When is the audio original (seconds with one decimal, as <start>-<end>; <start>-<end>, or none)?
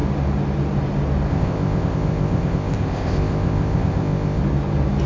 0.0-1.3; 4.4-5.1